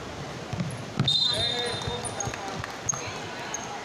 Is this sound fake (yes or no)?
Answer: no